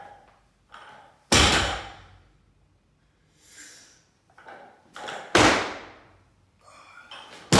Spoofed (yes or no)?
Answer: no